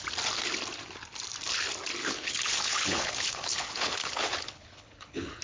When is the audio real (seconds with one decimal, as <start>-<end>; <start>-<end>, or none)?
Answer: 0.0-2.0